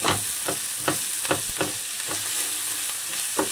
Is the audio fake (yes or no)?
no